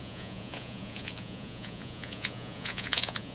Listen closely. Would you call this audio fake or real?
fake